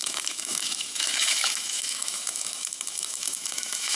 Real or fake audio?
fake